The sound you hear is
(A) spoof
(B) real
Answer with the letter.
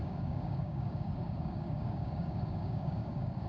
A